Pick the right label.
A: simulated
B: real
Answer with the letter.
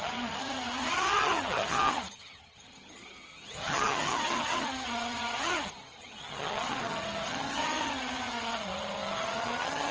A